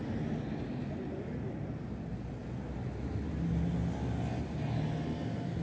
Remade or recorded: recorded